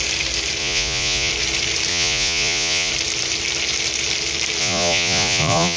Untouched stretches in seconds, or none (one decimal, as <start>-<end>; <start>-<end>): 0.0-0.6; 1.3-1.9; 2.9-4.6